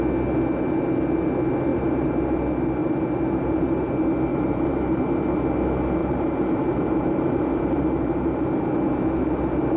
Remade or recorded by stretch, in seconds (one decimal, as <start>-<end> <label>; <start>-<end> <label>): 0.0-1.7 recorded; 1.7-2.4 remade; 2.4-2.8 recorded; 2.8-3.9 remade; 3.9-4.3 recorded; 4.3-5.0 remade; 5.0-6.0 recorded; 6.0-8.5 remade; 8.5-9.8 recorded